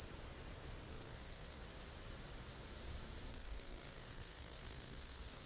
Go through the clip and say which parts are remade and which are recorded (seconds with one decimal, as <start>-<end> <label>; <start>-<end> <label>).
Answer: 0.0-0.9 recorded; 0.9-1.6 remade; 1.6-3.3 recorded; 3.3-5.5 remade